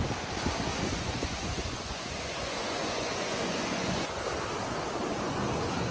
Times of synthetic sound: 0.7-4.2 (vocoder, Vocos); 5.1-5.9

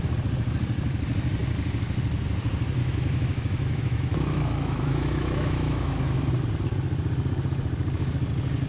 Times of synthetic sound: 2.8-6.3 (autoencoder, DAC-VAE)

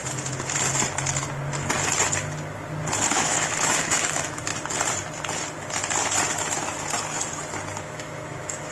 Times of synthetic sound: 3.1-4.5 (autoencoder, DAC-VAE); 7.8-8.7